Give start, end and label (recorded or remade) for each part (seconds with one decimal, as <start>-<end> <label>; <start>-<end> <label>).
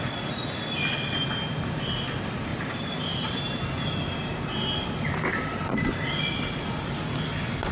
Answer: 0.0-2.5 recorded; 2.5-6.2 remade; 6.2-7.7 recorded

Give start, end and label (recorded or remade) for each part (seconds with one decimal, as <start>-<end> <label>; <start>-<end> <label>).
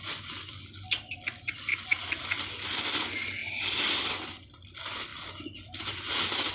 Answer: 0.0-6.5 recorded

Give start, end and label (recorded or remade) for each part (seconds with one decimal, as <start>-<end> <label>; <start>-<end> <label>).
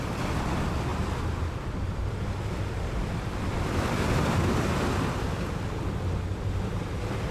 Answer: 0.0-7.3 recorded